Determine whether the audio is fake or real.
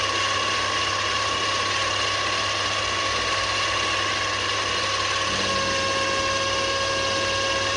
real